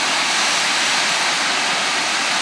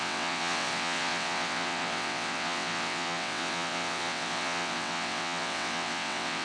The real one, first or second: first